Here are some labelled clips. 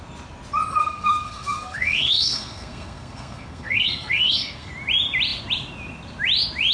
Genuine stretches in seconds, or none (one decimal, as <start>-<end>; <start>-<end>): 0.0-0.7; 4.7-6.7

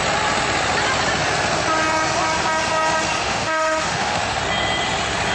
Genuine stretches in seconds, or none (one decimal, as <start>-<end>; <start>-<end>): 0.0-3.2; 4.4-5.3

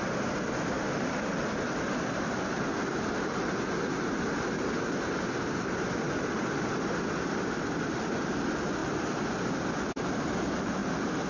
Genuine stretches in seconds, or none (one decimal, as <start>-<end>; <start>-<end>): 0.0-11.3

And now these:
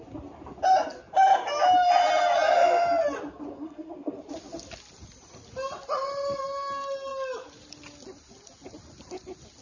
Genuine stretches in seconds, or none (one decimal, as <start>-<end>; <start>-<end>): 0.0-3.5; 4.2-9.6

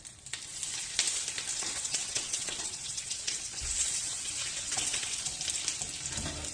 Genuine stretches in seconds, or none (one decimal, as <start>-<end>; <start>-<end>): 0.0-1.5; 5.4-6.5